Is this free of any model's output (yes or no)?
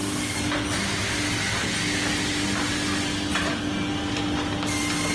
yes